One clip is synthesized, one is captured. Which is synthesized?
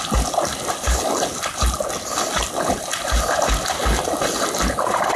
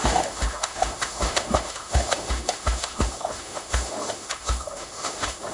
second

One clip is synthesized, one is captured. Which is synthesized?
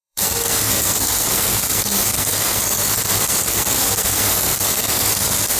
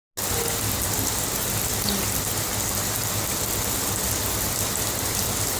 first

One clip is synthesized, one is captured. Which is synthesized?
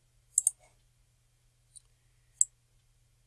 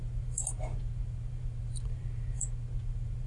second